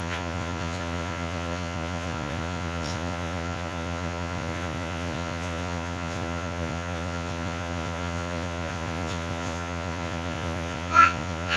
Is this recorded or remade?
remade